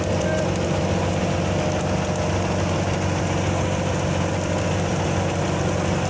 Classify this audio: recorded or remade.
recorded